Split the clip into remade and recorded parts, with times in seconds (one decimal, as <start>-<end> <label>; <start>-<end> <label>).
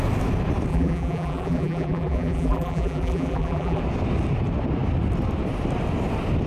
0.0-0.7 recorded; 0.7-3.8 remade; 3.8-6.5 recorded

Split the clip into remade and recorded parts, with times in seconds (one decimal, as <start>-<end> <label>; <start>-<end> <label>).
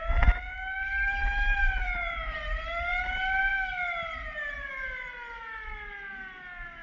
0.0-1.6 recorded; 1.6-3.0 remade; 3.0-6.8 recorded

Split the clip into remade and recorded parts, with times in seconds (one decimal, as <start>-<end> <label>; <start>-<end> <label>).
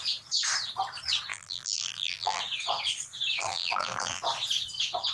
0.0-1.3 recorded; 1.3-2.4 remade; 2.4-3.4 recorded; 3.4-4.2 remade; 4.2-5.1 recorded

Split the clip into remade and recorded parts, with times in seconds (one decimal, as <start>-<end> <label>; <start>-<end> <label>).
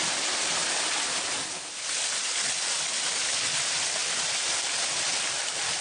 0.0-4.0 recorded; 4.0-4.8 remade; 4.8-5.8 recorded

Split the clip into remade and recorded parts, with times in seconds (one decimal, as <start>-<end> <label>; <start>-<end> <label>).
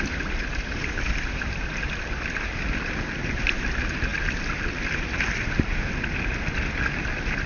0.0-4.1 remade; 4.1-7.5 recorded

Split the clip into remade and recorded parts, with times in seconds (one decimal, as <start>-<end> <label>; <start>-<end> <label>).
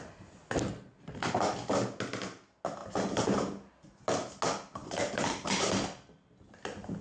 0.0-2.8 recorded; 2.8-3.7 remade; 3.7-4.8 recorded; 4.8-5.7 remade; 5.7-7.0 recorded